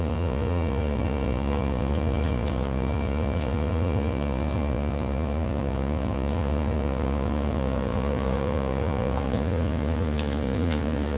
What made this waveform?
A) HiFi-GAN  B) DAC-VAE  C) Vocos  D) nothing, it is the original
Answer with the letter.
C